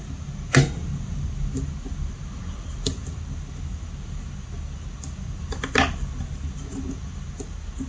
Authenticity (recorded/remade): recorded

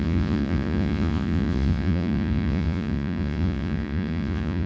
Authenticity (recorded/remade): remade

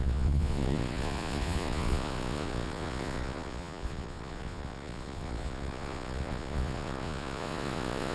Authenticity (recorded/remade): remade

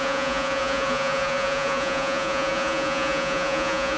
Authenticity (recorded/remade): remade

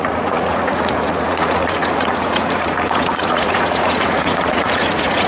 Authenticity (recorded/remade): remade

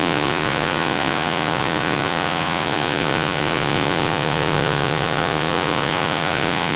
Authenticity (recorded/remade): remade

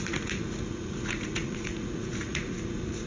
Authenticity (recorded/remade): remade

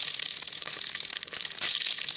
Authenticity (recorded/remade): recorded